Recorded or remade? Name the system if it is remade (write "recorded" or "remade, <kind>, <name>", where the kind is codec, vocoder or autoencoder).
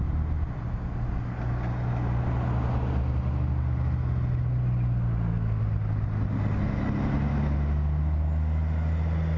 recorded